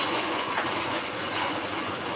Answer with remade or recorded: remade